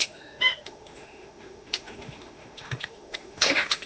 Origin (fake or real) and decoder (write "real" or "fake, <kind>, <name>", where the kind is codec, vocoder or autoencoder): fake, autoencoder, DAC-VAE